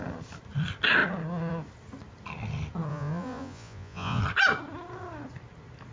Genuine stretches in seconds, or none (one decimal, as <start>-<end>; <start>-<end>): 0.0-2.9; 4.2-5.9